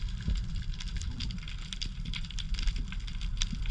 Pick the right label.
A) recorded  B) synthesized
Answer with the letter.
A